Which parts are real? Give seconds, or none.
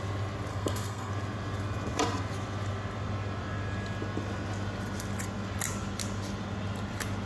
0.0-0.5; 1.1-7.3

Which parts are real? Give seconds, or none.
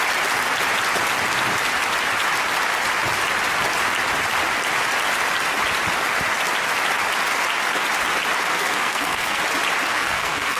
0.0-8.5; 9.4-9.9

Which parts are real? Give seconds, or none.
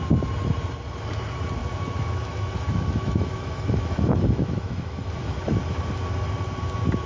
0.0-1.6; 5.4-7.1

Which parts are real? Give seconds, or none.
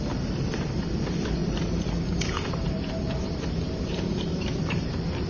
none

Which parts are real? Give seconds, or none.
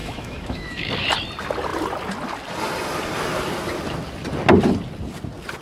0.9-5.6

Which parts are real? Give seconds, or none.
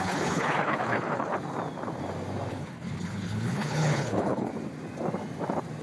1.3-2.5; 4.5-5.8